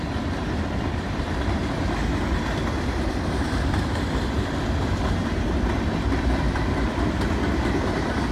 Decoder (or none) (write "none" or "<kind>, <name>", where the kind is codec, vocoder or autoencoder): vocoder, BigVGAN v2